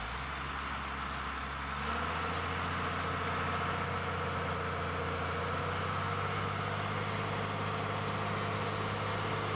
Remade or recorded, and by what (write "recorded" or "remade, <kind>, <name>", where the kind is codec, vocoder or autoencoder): recorded